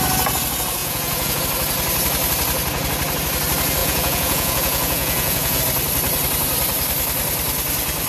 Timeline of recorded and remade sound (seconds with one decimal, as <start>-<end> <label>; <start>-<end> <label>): 0.0-0.8 recorded; 0.8-1.4 remade; 1.4-3.8 recorded; 3.8-5.6 remade; 5.6-8.1 recorded